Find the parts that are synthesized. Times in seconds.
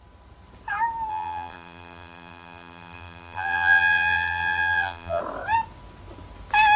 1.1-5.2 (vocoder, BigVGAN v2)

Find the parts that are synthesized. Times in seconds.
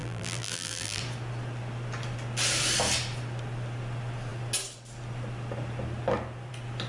0.0-1.0 (vocoder, BigVGAN v2)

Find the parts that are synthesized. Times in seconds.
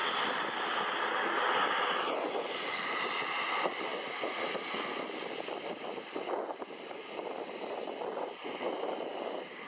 3.5-3.9 (vocoder, BigVGAN v2); 8.2-9.7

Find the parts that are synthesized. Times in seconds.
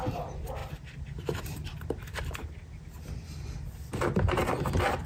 none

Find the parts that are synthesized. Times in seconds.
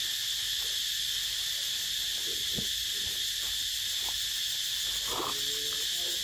none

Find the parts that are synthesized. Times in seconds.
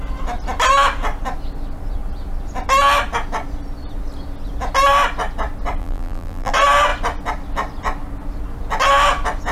5.8-6.5 (vocoder, BigVGAN v2)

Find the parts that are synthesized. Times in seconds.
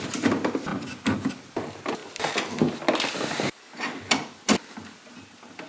0.0-0.7 (vocoder, BigVGAN v2); 1.3-2.0